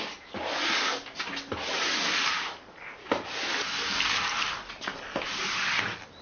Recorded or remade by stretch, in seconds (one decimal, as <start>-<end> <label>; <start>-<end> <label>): 0.0-6.2 recorded